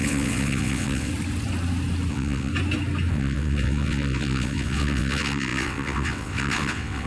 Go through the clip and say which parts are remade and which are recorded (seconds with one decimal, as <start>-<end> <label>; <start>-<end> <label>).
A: 0.0-1.1 remade; 1.1-2.1 recorded; 2.1-2.5 remade; 2.5-3.1 recorded; 3.1-7.1 remade